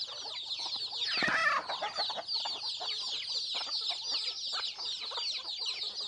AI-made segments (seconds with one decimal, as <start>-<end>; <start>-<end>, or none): none